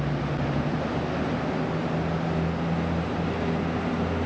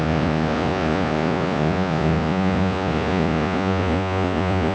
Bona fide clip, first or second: first